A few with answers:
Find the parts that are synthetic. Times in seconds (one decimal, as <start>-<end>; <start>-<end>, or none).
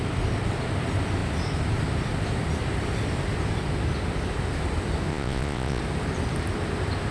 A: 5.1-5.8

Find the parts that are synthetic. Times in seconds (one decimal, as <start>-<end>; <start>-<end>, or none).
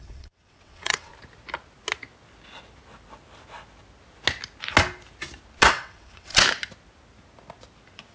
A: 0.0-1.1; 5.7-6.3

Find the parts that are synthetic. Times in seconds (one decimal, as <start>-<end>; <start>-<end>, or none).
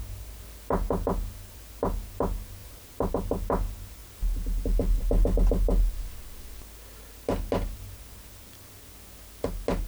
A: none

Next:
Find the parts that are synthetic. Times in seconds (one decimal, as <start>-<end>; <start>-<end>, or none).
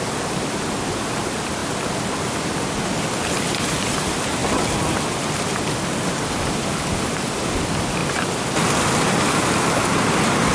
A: none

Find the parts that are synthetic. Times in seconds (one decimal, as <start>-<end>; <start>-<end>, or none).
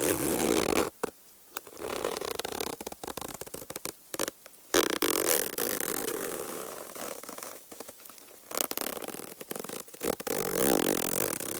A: 6.1-8.0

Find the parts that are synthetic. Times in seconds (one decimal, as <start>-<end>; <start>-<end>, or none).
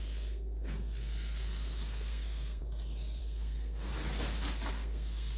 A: 0.0-2.6; 3.2-3.9; 4.7-5.4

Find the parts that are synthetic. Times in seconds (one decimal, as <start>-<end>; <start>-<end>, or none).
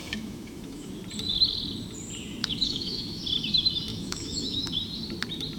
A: 0.0-0.9; 2.4-3.2; 3.9-4.6